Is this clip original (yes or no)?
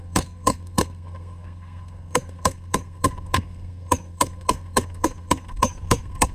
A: no